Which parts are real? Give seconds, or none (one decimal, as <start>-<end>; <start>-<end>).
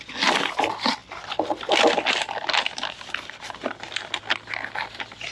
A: 0.0-5.3